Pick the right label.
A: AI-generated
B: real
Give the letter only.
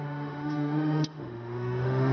A